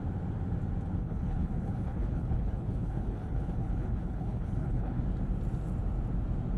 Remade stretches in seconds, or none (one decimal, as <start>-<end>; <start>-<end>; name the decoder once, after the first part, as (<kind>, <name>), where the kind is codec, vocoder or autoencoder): 1.0-5.0 (codec, HILCodec)